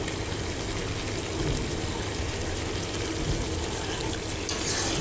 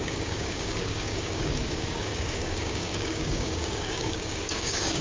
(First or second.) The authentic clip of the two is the first